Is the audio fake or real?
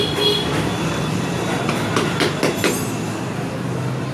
real